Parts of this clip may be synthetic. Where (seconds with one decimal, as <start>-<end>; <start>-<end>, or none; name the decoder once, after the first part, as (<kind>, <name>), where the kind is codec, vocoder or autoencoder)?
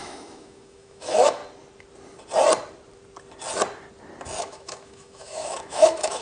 0.0-1.4 (autoencoder, DAC-VAE); 4.4-6.2